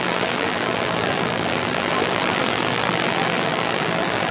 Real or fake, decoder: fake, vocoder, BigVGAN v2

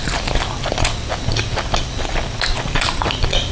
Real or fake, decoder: real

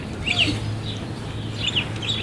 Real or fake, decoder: real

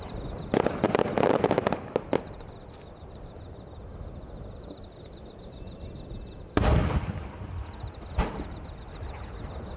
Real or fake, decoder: real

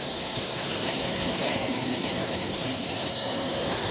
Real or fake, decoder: fake, codec, SNAC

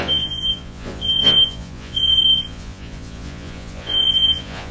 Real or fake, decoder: fake, vocoder, Vocos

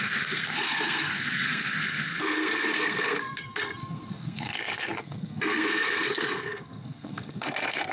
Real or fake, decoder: fake, codec, SNAC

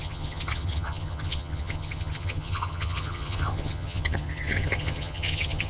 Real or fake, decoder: fake, vocoder, HiFi-GAN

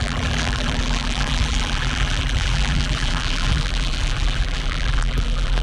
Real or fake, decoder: fake, vocoder, BigVGAN v2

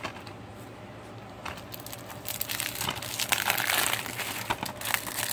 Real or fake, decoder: fake, vocoder, BigVGAN v2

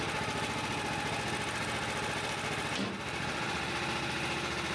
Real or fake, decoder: real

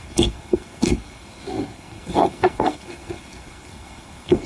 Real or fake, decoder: fake, codec, SNAC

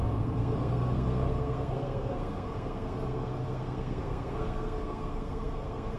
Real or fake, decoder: fake, codec, SNAC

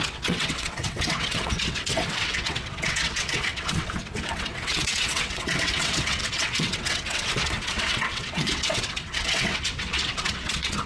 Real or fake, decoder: fake, vocoder, WaveNeXt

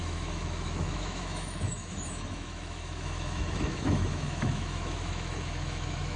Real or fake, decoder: fake, autoencoder, DAC-VAE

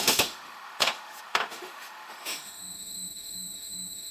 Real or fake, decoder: fake, autoencoder, DAC-VAE